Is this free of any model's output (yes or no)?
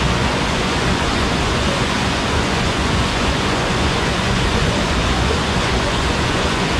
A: no